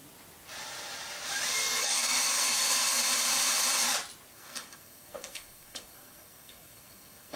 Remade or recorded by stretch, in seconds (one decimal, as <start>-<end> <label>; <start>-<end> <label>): 0.0-1.8 recorded; 1.8-3.0 remade; 3.0-4.3 recorded; 4.3-7.4 remade